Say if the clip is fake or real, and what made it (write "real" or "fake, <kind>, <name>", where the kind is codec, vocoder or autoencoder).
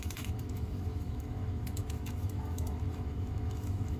fake, autoencoder, DAC-VAE